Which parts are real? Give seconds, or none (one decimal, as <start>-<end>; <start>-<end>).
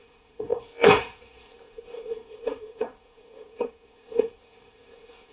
none